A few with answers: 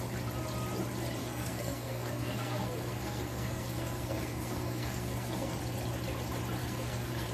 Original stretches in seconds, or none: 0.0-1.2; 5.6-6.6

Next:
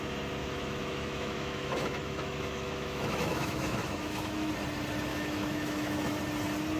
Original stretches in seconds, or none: 0.0-0.4; 4.5-5.1; 6.1-6.8

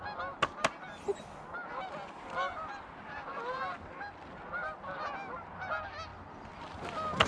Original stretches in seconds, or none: 0.0-7.3

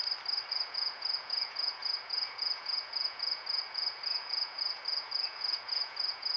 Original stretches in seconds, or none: 0.0-0.5

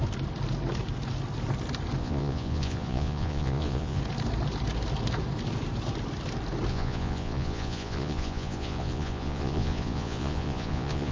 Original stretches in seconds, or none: 0.0-2.0; 4.0-6.7

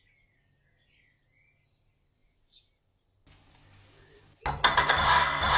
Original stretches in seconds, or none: 0.0-5.6

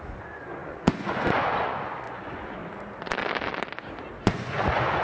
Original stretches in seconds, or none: 2.6-4.2

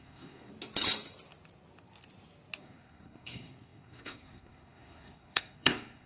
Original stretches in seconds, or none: 0.5-2.6